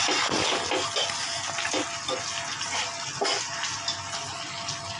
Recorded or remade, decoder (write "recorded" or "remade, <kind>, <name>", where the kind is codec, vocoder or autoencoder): recorded